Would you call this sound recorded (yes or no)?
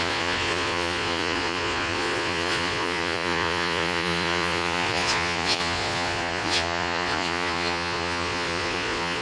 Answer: no